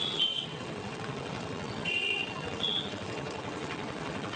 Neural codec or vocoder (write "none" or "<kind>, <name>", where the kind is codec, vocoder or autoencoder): vocoder, WaveNeXt